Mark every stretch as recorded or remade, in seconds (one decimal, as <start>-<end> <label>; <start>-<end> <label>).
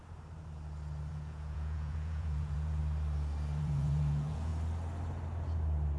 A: 0.0-1.1 recorded; 1.1-2.8 remade; 2.8-3.6 recorded; 3.6-4.5 remade; 4.5-6.0 recorded